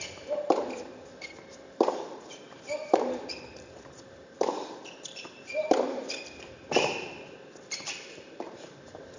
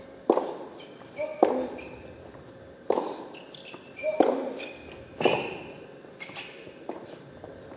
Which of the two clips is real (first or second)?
second